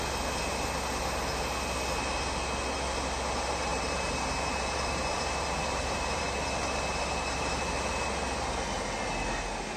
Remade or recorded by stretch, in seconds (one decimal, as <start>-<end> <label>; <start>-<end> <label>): 0.0-3.7 recorded; 3.7-6.2 remade; 6.2-9.8 recorded